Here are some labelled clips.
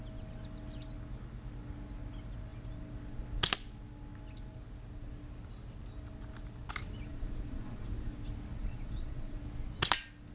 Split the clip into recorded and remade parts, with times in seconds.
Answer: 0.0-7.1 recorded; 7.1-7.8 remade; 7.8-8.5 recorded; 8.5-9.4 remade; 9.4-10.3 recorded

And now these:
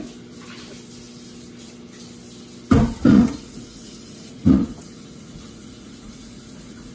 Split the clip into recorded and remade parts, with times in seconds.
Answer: 0.0-3.1 recorded; 3.1-6.9 remade

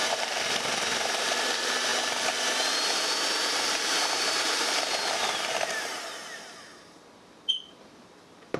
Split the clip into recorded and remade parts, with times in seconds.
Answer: 0.0-1.9 remade; 1.9-3.3 recorded; 3.3-8.6 remade